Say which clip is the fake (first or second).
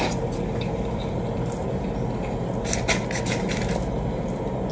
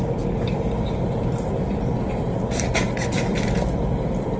second